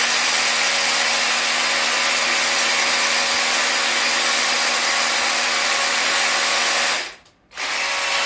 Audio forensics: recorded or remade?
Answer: recorded